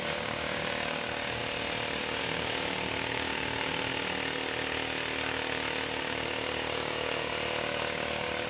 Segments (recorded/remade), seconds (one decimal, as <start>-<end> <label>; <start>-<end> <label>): 0.0-1.4 remade; 1.4-2.2 recorded; 2.2-3.9 remade; 3.9-6.0 recorded; 6.0-7.3 remade; 7.3-7.8 recorded; 7.8-8.5 remade